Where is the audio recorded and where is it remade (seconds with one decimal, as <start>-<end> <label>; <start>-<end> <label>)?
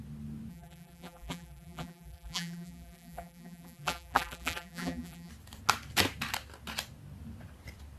0.0-0.5 recorded; 0.5-5.3 remade; 5.3-8.0 recorded